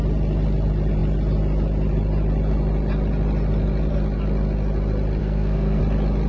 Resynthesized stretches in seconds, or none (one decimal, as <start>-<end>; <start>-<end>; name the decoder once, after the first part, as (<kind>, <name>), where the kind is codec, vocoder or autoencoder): 5.2-5.8 (codec, SNAC)